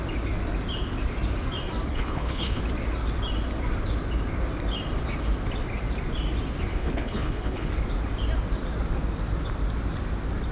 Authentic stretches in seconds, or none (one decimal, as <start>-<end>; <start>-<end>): 0.0-1.9; 2.6-6.7; 7.7-10.5